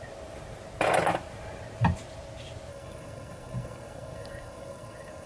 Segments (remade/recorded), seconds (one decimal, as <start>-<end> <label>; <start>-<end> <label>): 0.0-2.7 recorded; 2.7-5.3 remade